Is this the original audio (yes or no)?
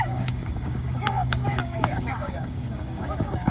no